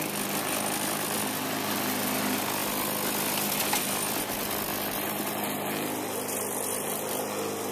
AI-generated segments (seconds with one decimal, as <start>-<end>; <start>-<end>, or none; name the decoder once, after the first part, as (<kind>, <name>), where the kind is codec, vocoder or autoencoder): none